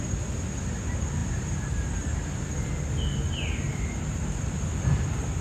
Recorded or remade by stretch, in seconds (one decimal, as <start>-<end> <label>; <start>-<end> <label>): 0.0-5.4 recorded